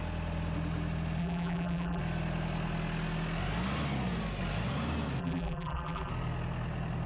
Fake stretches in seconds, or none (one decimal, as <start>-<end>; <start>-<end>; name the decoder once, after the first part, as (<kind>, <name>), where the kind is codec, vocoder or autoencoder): 1.2-2.0 (vocoder, BigVGAN v2); 5.2-6.1